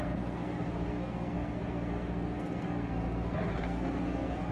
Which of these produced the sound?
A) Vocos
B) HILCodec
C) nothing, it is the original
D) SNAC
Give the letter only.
D